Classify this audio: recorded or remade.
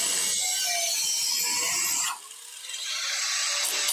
recorded